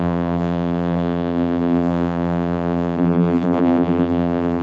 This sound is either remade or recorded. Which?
remade